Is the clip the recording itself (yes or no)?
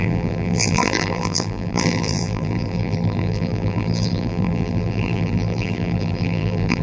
no